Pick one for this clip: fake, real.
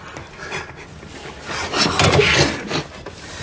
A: real